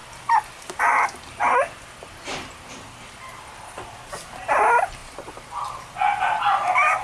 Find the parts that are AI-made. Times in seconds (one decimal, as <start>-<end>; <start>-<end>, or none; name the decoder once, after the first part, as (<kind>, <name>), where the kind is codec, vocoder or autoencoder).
none